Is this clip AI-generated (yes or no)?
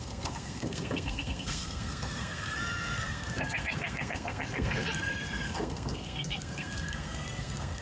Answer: yes